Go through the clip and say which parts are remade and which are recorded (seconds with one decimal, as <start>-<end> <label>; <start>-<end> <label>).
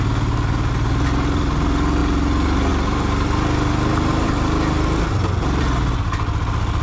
0.0-6.8 recorded